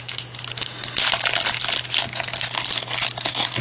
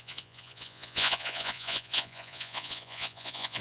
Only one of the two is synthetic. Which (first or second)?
second